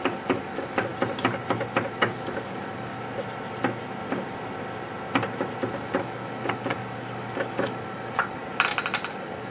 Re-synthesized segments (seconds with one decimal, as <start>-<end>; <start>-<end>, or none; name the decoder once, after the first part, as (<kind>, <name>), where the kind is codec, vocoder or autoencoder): 0.0-0.9 (codec, DAC); 1.9-2.9; 5.7-8.4; 9.1-9.5